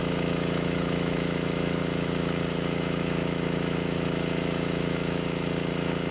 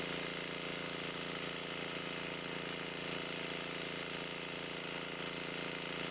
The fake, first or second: first